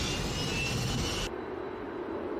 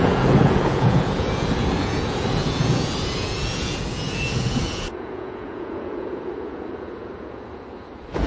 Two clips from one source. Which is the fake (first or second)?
second